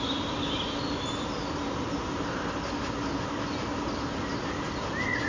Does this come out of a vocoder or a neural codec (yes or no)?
no